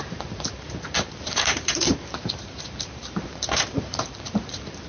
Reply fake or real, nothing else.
fake